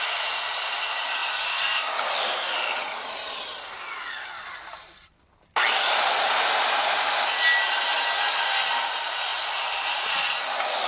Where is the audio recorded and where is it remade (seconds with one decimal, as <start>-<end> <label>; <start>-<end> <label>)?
0.0-9.3 recorded; 9.3-10.1 remade; 10.1-10.9 recorded